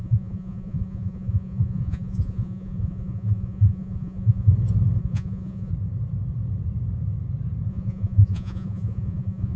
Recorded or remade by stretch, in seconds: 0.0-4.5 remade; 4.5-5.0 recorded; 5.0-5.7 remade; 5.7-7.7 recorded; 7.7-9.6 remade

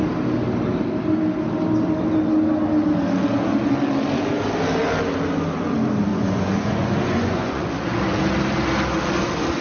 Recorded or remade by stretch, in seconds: 0.0-6.1 recorded; 6.1-7.7 remade; 7.7-9.6 recorded

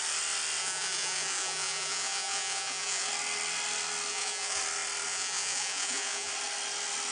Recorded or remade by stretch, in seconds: 0.0-0.6 recorded; 0.6-3.1 remade; 3.1-4.1 recorded; 4.1-4.6 remade; 4.6-5.1 recorded; 5.1-6.3 remade; 6.3-7.1 recorded

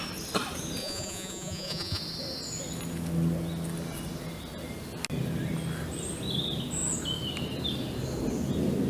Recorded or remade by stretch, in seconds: 0.0-0.8 recorded; 0.8-2.0 remade; 2.0-8.9 recorded